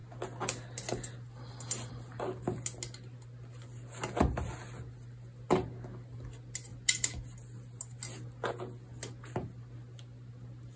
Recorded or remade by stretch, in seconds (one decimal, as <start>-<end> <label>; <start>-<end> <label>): 0.0-10.8 recorded